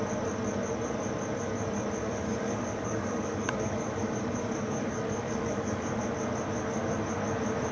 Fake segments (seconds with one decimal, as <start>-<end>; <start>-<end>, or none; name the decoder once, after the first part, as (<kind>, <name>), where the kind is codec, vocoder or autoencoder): 2.0-6.0 (codec, DAC)